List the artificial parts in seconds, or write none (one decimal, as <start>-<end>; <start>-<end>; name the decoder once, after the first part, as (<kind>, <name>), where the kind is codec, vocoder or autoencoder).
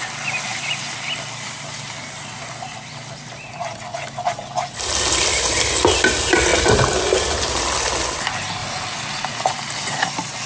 0.5-2.9 (vocoder, BigVGAN v2)